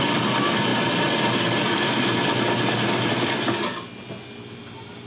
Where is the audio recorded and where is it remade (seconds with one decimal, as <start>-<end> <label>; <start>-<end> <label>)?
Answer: 0.0-5.1 recorded